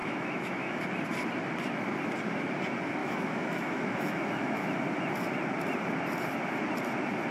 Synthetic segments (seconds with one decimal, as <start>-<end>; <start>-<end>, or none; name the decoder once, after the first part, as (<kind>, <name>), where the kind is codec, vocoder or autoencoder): 0.0-0.8 (autoencoder, DAC-VAE); 3.0-4.7